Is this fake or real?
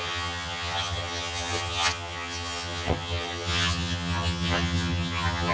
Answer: fake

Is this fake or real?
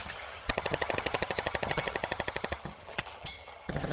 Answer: fake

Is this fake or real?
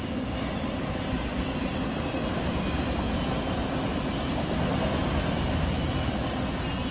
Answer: real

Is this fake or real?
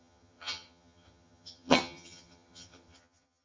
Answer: fake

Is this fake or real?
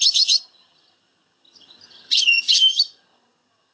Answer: fake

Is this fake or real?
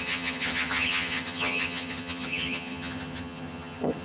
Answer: fake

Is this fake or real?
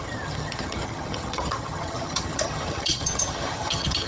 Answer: fake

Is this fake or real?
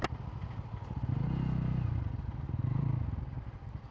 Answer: real